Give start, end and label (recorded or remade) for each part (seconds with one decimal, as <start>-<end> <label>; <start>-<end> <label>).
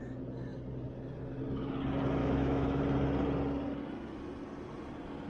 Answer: 0.0-2.2 recorded; 2.2-2.8 remade; 2.8-5.3 recorded